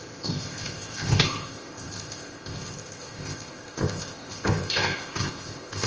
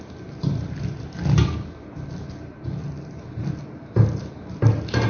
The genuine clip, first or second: second